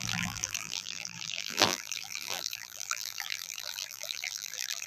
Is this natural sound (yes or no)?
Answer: no